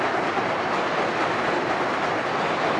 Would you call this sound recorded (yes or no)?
yes